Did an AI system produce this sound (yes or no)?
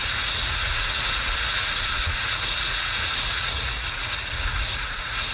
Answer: yes